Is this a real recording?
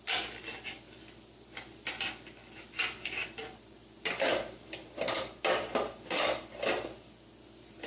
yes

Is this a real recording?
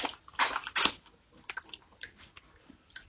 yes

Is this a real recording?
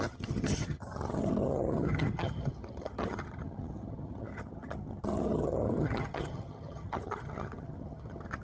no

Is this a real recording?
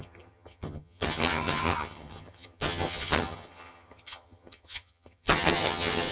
no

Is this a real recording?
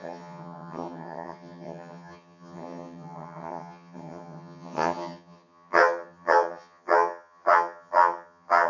no